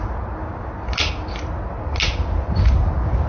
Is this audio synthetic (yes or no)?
no